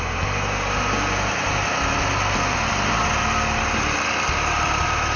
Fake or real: real